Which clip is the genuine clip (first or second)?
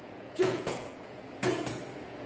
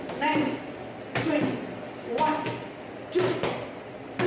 second